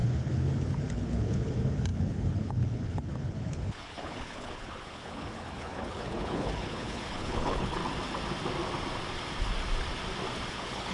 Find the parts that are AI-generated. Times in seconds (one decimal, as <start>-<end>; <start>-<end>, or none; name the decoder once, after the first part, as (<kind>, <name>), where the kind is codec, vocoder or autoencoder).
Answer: 0.0-7.8 (codec, HILCodec); 10.5-10.9